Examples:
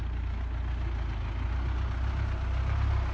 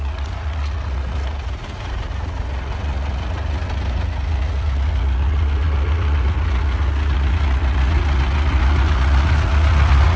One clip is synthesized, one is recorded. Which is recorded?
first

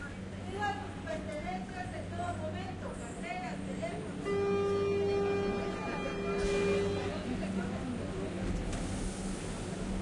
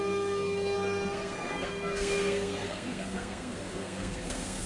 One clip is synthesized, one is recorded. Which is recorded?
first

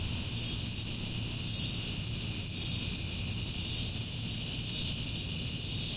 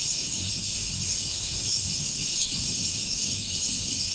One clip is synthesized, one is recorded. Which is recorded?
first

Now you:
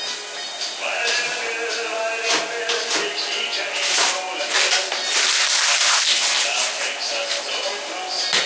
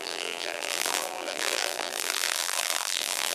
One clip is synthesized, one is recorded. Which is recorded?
first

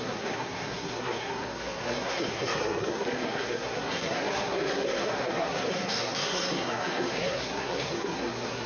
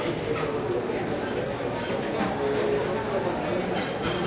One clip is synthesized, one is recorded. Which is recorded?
second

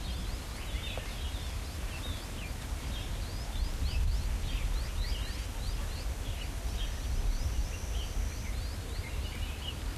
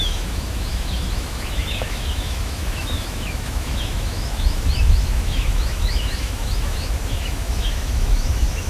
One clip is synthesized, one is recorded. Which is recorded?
first